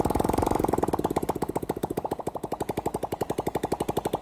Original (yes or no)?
no